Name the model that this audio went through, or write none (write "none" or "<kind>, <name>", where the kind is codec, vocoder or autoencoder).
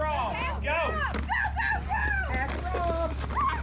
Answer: none